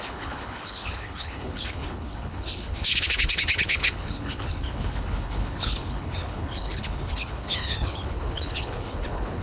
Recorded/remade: remade